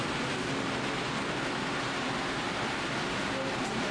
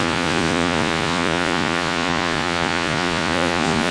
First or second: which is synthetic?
second